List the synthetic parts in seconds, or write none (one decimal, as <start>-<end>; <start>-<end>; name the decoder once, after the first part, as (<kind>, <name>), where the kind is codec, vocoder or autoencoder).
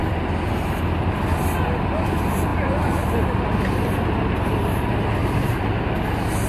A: 5.2-5.7 (vocoder, BigVGAN v2)